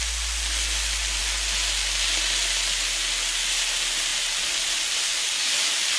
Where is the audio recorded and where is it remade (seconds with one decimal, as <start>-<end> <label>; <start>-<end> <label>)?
0.0-6.0 recorded